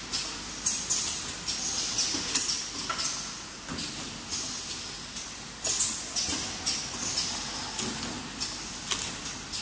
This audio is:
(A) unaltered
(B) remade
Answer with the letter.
A